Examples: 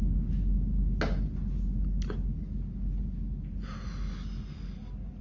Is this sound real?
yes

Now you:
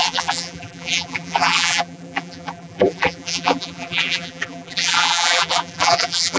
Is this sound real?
no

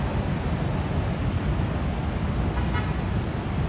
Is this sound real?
yes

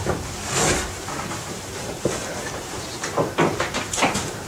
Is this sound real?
no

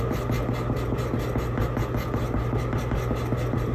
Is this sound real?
yes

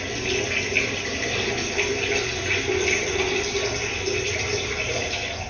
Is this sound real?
yes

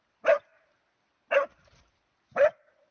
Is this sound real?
yes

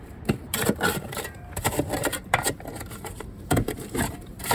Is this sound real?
no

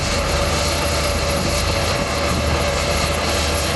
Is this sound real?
no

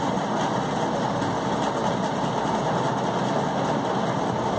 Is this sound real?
yes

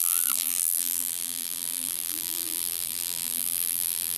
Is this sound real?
no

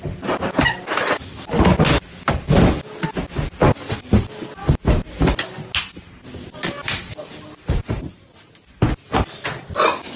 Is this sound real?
yes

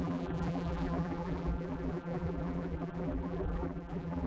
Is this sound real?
no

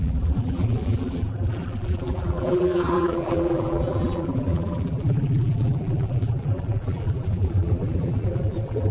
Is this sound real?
no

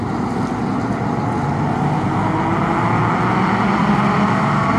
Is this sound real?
yes